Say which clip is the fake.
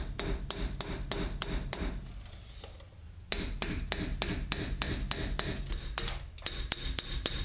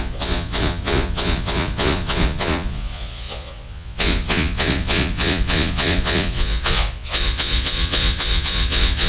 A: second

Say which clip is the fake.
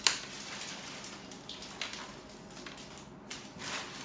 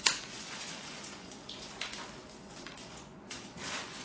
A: second